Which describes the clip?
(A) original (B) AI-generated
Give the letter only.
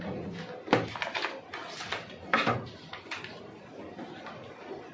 A